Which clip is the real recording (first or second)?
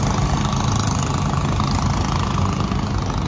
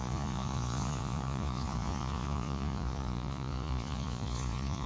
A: first